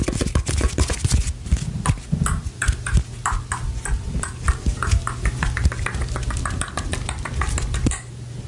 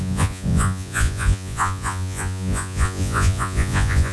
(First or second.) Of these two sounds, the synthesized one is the second